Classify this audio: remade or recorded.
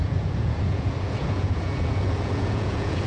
remade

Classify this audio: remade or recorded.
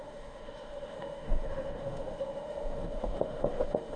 remade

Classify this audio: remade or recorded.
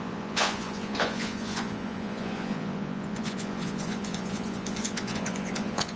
remade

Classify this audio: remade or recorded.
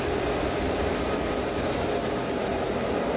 recorded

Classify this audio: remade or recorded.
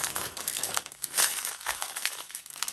remade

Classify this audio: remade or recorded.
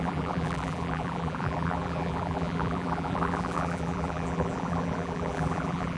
remade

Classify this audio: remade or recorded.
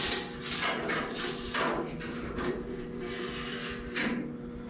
recorded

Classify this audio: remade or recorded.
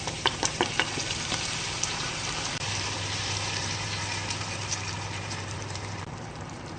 remade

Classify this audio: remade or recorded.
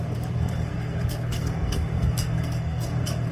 remade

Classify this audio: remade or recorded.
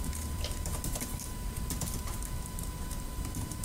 remade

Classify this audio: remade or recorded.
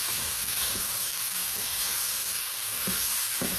remade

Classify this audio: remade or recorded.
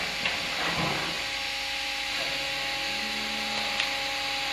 recorded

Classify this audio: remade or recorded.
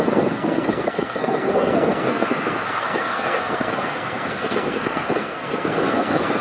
remade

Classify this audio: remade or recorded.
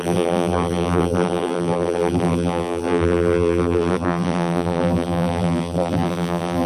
remade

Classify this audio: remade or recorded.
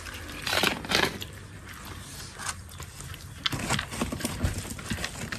recorded